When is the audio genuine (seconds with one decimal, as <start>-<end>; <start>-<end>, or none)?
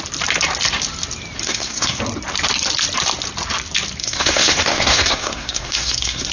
0.0-1.4; 2.0-4.0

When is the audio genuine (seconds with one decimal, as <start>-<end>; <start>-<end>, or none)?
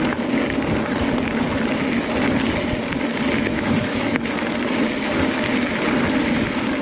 0.0-3.5; 4.2-6.8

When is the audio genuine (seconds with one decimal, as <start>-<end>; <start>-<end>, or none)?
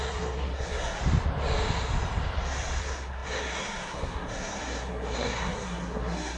1.0-2.8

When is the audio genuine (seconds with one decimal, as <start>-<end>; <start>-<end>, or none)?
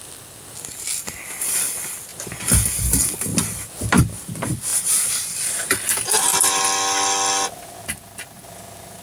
0.0-4.7; 6.6-9.0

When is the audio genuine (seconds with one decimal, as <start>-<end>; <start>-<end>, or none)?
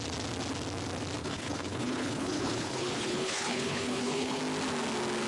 0.0-1.2; 4.4-5.3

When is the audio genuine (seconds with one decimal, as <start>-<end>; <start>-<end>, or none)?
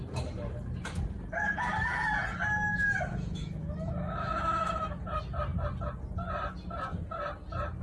0.0-2.7; 5.0-7.8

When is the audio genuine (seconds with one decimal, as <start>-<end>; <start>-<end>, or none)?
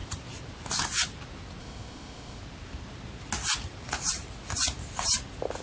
0.0-1.6; 2.4-5.6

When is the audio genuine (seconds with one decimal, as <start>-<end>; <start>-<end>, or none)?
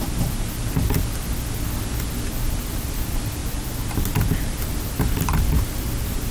0.0-2.5; 3.4-4.4